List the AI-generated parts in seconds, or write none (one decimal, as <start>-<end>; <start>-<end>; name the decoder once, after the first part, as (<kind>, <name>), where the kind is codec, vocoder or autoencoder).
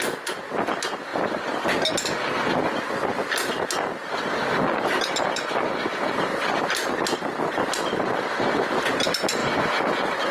9.4-9.9 (vocoder, BigVGAN v2)